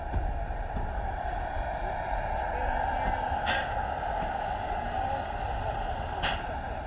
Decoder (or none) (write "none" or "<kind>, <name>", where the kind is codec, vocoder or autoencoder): none